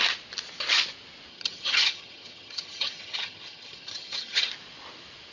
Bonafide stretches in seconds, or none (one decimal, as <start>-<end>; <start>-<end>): 0.0-1.3; 4.5-5.3